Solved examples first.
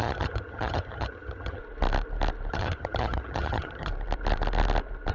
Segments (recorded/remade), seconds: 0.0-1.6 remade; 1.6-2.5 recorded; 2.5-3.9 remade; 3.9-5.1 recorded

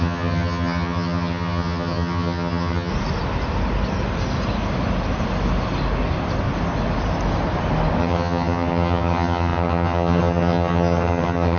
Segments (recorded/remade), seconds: 0.0-2.9 remade; 2.9-8.0 recorded; 8.0-11.6 remade

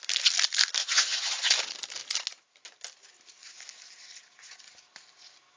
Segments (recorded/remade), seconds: 0.0-0.8 recorded; 0.8-1.5 remade; 1.5-5.6 recorded